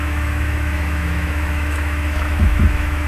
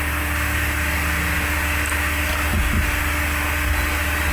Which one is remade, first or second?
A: first